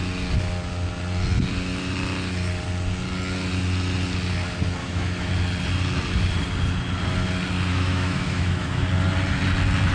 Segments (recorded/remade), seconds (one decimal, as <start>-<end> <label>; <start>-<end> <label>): 0.0-4.8 recorded; 4.8-5.3 remade; 5.3-7.7 recorded; 7.7-8.8 remade; 8.8-9.9 recorded